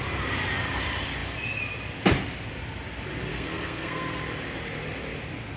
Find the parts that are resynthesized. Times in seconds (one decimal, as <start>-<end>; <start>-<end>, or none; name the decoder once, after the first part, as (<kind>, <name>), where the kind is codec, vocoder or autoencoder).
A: 3.3-4.2 (codec, SNAC)